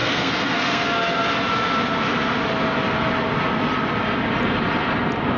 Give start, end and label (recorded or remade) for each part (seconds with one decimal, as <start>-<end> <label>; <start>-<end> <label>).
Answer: 0.0-1.3 remade; 1.3-5.4 recorded